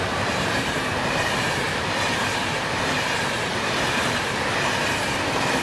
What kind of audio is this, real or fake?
fake